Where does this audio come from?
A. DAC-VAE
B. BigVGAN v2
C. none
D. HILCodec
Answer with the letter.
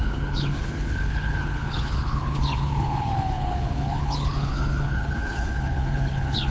D